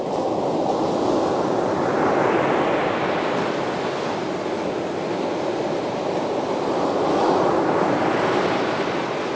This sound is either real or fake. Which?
real